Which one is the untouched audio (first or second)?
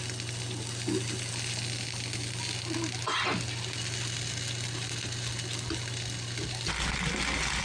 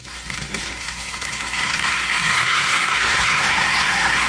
first